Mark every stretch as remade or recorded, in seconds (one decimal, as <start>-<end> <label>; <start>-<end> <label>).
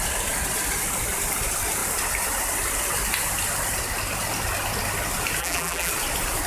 0.0-5.4 recorded; 5.4-5.9 remade; 5.9-6.5 recorded